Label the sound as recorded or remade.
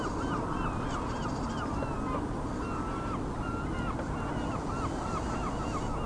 recorded